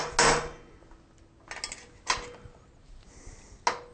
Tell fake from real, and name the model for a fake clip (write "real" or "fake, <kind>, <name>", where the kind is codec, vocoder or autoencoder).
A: real